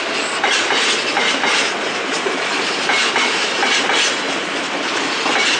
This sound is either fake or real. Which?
real